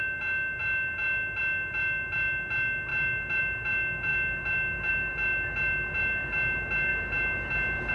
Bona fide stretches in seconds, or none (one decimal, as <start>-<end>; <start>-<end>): 0.0-7.9